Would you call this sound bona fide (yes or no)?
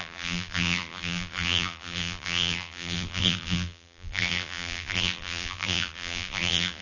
no